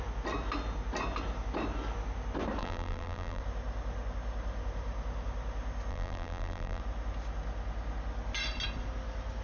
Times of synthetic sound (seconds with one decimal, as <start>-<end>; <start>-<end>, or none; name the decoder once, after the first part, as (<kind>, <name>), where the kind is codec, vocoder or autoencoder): 2.6-3.4 (vocoder, BigVGAN v2); 5.9-6.8

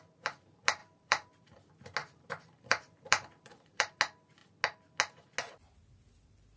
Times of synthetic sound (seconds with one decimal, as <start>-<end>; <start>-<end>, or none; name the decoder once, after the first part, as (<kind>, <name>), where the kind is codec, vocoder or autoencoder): 0.8-1.6 (vocoder, BigVGAN v2); 2.0-4.0

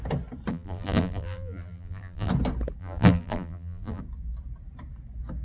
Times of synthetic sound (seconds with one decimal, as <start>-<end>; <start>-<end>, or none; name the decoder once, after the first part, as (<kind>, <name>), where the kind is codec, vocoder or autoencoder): 0.5-2.3 (vocoder, BigVGAN v2); 2.8-4.0

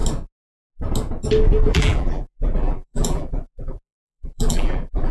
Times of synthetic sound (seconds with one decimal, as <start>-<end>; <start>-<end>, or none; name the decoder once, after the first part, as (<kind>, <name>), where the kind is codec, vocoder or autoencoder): 1.7-5.1 (vocoder, BigVGAN v2)